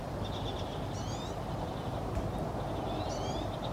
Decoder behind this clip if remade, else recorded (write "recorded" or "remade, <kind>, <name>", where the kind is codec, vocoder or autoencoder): recorded